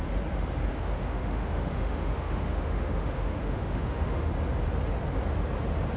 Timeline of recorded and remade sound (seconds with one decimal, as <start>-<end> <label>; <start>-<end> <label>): 0.0-0.7 recorded; 0.7-4.3 remade; 4.3-6.0 recorded